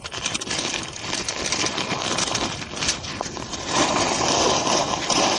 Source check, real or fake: real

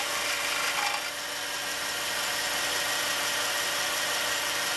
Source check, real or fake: real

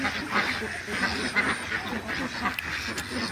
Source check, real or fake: real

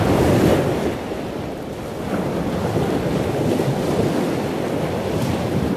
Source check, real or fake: real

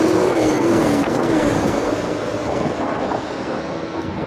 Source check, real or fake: fake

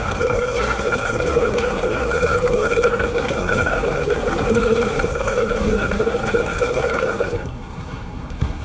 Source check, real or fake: fake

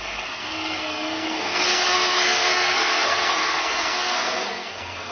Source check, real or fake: fake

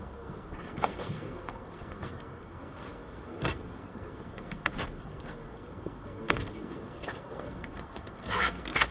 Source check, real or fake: fake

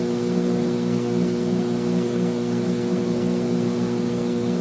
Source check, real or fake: fake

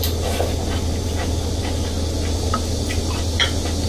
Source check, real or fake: real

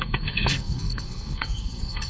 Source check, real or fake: fake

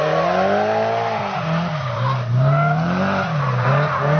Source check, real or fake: real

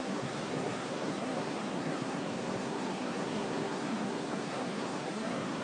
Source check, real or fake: fake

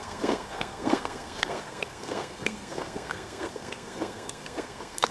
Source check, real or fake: fake